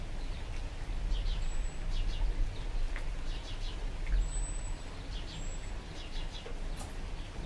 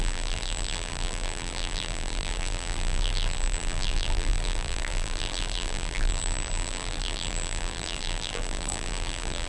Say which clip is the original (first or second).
first